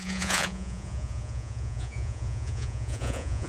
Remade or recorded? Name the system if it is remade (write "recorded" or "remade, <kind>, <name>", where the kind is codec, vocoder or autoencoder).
remade, vocoder, Vocos